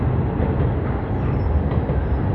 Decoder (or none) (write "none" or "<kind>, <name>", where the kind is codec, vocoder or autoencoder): none